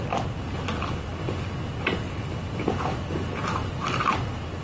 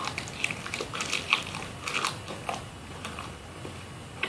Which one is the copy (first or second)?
second